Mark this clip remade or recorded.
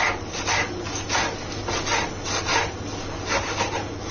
recorded